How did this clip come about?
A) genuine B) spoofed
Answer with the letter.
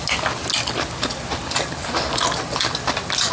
A